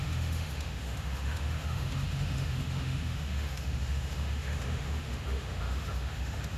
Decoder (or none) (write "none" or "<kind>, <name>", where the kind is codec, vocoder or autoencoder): autoencoder, DAC-VAE